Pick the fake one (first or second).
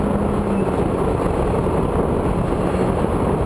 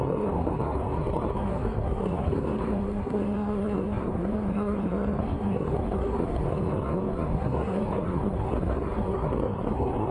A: second